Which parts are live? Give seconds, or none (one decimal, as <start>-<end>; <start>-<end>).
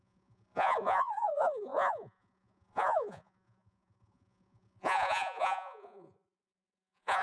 none